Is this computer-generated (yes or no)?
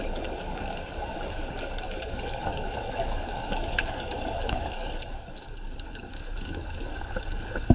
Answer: yes